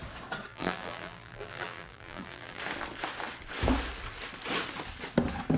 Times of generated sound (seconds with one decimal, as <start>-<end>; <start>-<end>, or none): 0.5-2.6